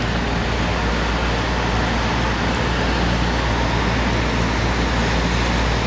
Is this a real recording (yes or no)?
yes